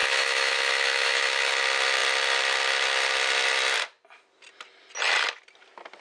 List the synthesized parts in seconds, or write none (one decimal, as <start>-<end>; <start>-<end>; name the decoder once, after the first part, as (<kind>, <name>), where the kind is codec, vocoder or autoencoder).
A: 0.0-1.5 (autoencoder, DAC-VAE)